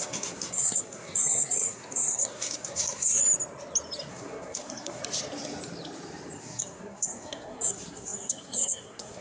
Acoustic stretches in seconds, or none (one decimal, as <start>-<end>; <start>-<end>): 3.2-4.1; 5.0-6.4

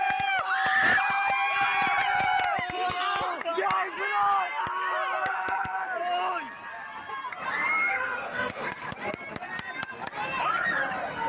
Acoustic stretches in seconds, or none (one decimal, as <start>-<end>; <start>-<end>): 0.0-7.9; 8.9-11.3

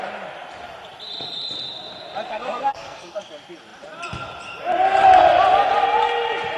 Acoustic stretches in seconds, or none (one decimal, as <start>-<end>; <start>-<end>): 0.0-2.3; 3.2-6.6

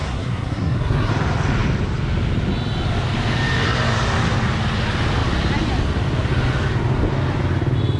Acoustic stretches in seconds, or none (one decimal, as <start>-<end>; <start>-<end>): 1.1-8.0

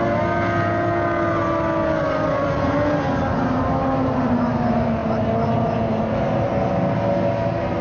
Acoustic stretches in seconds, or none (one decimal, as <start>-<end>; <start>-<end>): 0.0-7.8

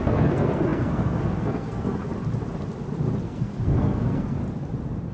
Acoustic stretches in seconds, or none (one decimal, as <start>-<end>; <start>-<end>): 2.1-3.2; 4.4-5.1